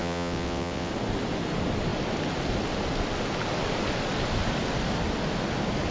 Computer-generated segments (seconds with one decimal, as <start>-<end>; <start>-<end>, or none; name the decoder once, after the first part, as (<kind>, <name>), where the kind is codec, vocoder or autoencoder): 0.0-0.9 (vocoder, WaveNeXt)